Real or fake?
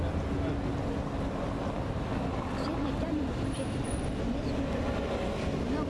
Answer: real